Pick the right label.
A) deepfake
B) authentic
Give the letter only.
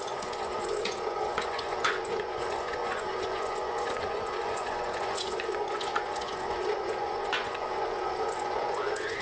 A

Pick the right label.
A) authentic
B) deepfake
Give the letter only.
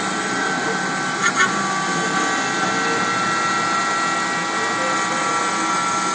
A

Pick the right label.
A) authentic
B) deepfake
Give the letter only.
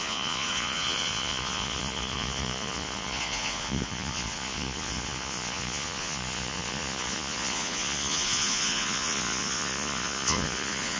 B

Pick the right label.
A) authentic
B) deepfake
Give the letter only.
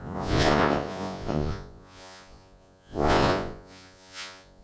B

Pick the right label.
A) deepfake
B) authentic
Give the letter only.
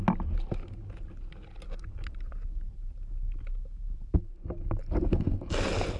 B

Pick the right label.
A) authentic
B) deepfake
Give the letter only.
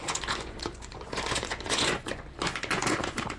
B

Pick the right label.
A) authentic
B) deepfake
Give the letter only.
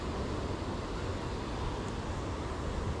A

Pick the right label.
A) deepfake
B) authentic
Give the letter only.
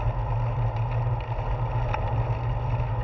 B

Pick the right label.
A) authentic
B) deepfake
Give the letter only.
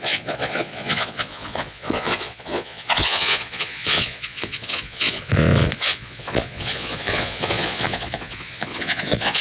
B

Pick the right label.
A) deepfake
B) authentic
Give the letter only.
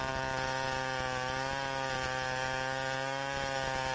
B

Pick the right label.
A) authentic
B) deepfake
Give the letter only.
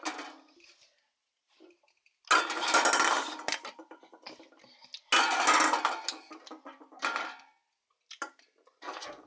A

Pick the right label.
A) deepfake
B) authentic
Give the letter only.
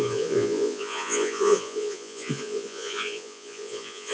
A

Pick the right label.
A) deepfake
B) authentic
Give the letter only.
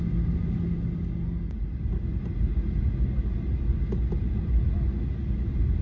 B